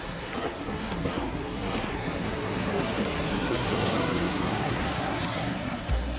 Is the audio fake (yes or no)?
yes